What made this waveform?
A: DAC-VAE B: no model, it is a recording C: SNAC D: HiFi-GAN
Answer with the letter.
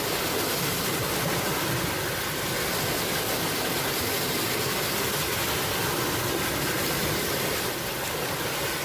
B